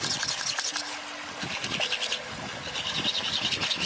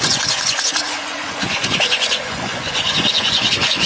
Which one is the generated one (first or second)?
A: second